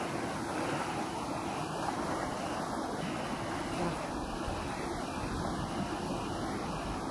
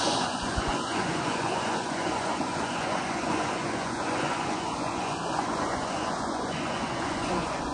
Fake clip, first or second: second